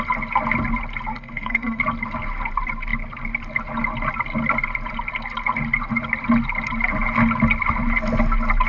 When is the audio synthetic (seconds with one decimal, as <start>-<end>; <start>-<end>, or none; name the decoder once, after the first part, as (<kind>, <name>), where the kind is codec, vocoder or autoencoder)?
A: 1.1-1.8 (codec, SNAC)